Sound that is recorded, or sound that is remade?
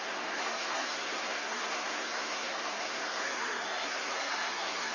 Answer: remade